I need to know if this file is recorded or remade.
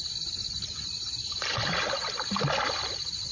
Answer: recorded